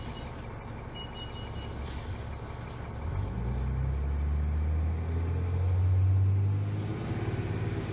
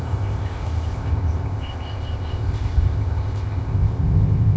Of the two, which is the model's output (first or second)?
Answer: second